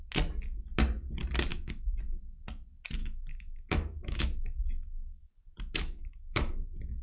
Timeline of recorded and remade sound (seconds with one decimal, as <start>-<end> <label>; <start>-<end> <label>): 0.0-1.5 recorded; 1.5-2.0 remade; 2.0-3.0 recorded; 3.0-5.3 remade; 5.3-5.8 recorded; 5.8-6.6 remade; 6.6-7.0 recorded